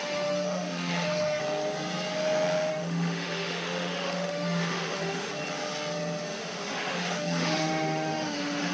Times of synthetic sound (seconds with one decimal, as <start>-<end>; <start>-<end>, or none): 0.0-1.4; 2.7-5.3; 6.2-8.7